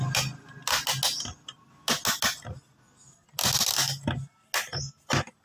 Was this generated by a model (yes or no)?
no